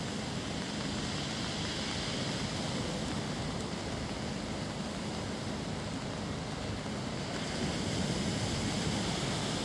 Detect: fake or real real